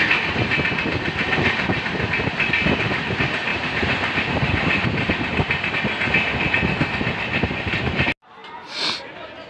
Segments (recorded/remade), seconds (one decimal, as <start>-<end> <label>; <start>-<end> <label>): 0.0-3.5 recorded; 3.5-5.7 remade; 5.7-9.5 recorded